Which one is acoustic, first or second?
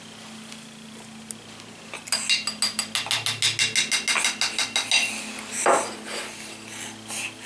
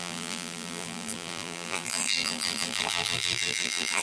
first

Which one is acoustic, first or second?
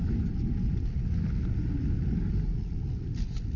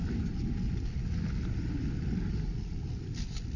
first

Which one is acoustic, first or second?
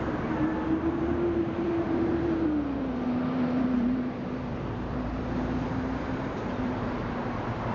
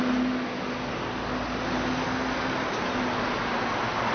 second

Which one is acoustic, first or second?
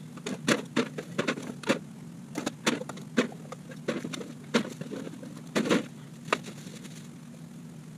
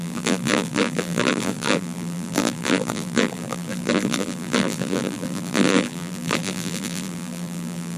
first